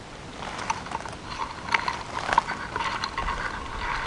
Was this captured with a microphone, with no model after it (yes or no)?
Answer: yes